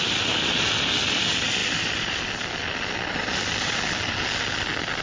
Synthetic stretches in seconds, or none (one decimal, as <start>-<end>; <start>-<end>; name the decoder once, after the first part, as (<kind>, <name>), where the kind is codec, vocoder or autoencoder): none